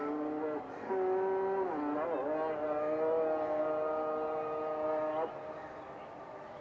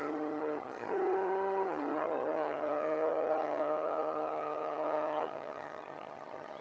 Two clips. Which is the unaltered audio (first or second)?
first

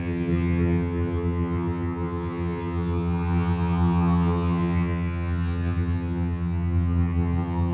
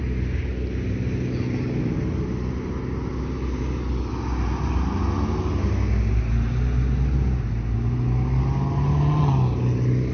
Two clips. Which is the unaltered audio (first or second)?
second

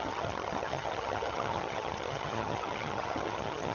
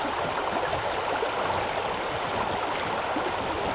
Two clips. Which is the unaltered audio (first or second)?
second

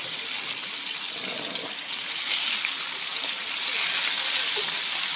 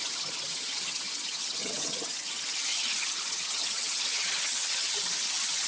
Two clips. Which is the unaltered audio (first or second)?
first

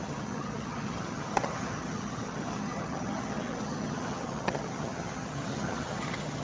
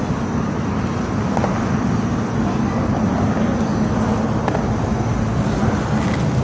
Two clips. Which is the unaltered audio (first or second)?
second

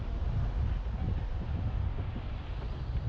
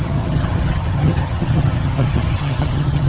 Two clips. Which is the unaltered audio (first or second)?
first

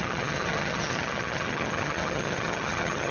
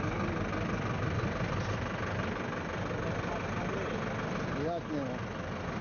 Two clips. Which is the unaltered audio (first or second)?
second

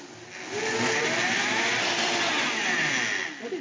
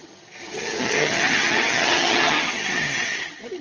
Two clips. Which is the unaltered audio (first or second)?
first